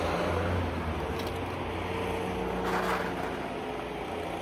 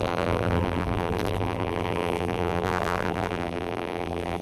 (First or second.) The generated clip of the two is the second